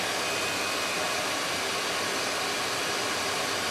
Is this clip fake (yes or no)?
no